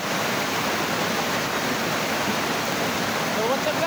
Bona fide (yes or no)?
yes